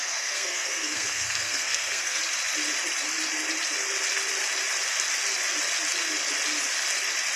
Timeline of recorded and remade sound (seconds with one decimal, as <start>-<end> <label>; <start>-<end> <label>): 0.0-2.2 remade; 2.2-7.4 recorded